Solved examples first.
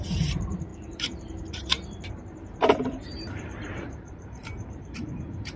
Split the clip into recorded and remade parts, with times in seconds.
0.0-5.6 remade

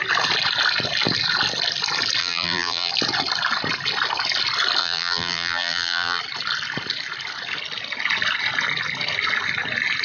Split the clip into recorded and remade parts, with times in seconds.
0.0-2.2 recorded; 2.2-2.9 remade; 2.9-4.8 recorded; 4.8-6.2 remade; 6.2-10.0 recorded

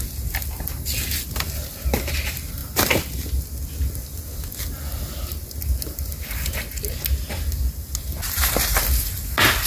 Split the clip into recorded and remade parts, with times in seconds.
0.0-9.7 recorded

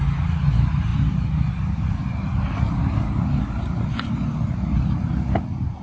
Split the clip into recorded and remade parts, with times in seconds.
0.0-5.8 recorded

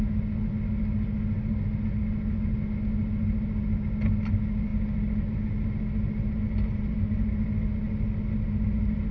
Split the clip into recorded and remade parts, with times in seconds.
0.0-9.1 recorded

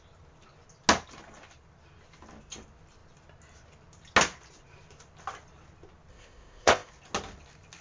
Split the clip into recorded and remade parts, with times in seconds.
0.0-6.1 recorded; 6.1-6.9 remade; 6.9-7.8 recorded